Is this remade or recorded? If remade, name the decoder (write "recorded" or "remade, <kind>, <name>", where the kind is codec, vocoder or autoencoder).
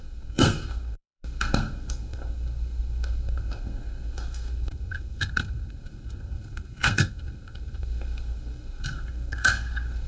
remade, codec, SNAC